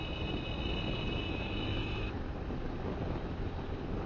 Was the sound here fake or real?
real